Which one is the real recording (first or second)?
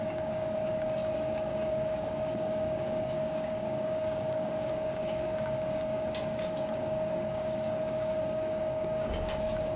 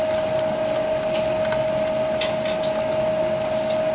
second